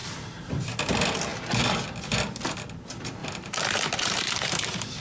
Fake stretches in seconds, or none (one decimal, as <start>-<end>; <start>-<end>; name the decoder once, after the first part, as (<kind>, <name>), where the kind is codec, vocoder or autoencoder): 0.0-0.8 (vocoder, BigVGAN v2); 3.2-5.0